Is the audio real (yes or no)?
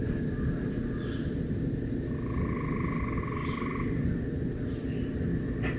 yes